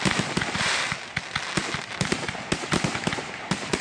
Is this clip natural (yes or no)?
yes